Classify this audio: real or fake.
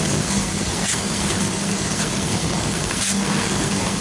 fake